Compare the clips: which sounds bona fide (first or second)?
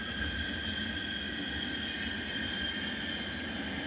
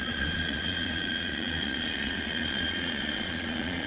first